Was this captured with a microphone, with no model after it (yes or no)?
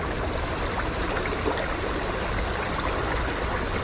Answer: yes